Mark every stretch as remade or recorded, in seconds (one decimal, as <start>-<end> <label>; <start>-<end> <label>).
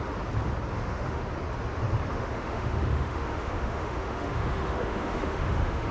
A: 0.0-0.7 recorded; 0.7-1.2 remade; 1.2-2.1 recorded; 2.1-5.9 remade